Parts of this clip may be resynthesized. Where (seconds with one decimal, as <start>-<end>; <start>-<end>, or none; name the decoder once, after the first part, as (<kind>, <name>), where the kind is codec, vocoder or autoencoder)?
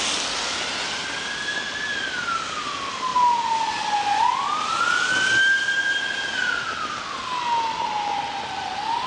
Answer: none